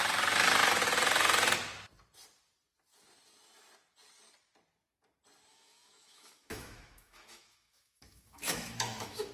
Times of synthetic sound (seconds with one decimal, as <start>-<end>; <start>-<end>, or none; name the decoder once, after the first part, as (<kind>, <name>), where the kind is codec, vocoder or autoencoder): 5.5-9.3 (autoencoder, DAC-VAE)